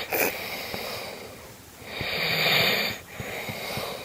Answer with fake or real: real